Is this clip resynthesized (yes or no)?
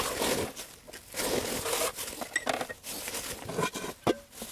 no